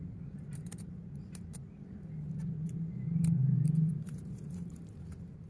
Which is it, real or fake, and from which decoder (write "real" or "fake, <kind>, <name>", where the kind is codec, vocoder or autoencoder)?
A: fake, vocoder, BigVGAN v2